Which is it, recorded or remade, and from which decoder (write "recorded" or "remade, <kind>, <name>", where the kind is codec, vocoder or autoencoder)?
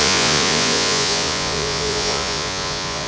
remade, vocoder, Vocos